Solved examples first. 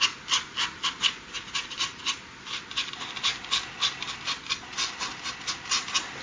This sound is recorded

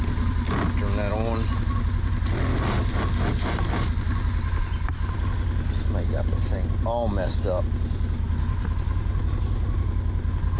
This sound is recorded